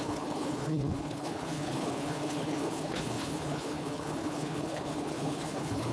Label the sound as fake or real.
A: fake